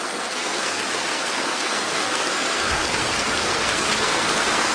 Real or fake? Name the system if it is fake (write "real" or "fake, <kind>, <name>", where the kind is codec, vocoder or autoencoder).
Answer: fake, codec, SNAC